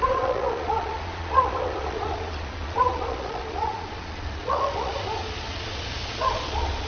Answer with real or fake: fake